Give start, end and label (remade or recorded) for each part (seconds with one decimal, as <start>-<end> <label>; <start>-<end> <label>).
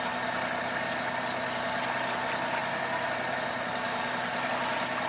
0.0-5.1 recorded